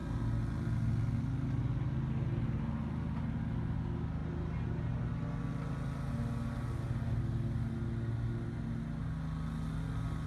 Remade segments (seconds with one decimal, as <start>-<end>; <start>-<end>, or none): none